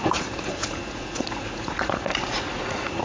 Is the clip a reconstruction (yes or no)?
yes